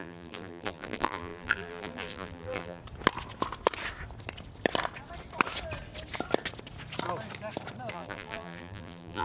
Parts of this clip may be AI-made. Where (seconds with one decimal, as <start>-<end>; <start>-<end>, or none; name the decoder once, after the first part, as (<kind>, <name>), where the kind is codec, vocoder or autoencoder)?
0.0-2.8 (vocoder, BigVGAN v2); 7.9-9.2